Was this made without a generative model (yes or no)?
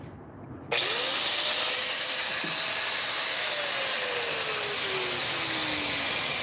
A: yes